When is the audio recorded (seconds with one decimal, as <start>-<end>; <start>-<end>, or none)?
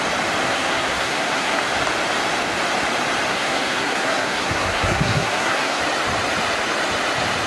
0.0-0.4; 1.6-3.3; 5.8-7.5